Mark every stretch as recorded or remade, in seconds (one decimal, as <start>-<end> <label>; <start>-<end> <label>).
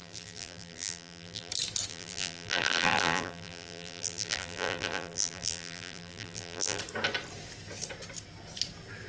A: 0.0-1.5 remade; 1.5-1.9 recorded; 1.9-6.8 remade; 6.8-9.1 recorded